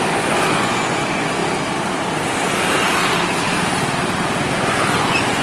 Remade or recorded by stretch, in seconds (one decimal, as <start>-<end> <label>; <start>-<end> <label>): 0.0-1.4 remade; 1.4-4.6 recorded; 4.6-5.4 remade

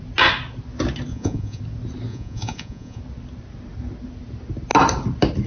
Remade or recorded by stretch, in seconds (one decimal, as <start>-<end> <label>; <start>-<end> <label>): 0.0-1.1 recorded; 1.1-1.6 remade; 1.6-2.1 recorded; 2.1-3.0 remade; 3.0-5.5 recorded

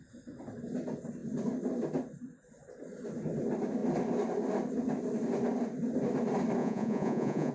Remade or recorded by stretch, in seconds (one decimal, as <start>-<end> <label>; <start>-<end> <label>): 0.0-6.6 recorded; 6.6-7.5 remade

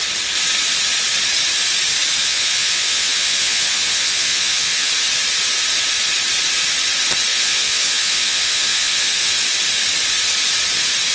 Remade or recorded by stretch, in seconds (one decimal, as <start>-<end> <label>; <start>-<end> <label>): 0.0-2.2 recorded; 2.2-4.9 remade; 4.9-7.3 recorded; 7.3-9.3 remade; 9.3-11.1 recorded

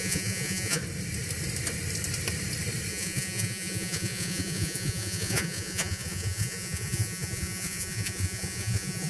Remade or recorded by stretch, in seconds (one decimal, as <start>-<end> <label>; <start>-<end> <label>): 0.0-0.8 remade; 0.8-2.9 recorded; 2.9-9.1 remade

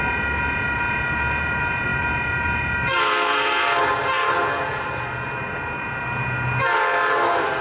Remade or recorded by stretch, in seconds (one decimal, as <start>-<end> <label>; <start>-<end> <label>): 0.0-7.6 recorded

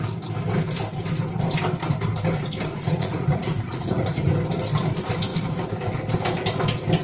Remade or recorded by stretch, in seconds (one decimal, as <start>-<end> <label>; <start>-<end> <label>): 0.0-2.7 recorded; 2.7-4.3 remade; 4.3-7.0 recorded

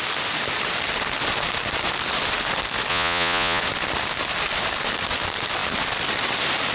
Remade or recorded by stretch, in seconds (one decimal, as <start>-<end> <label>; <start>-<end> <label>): 0.0-2.9 recorded; 2.9-3.6 remade; 3.6-6.7 recorded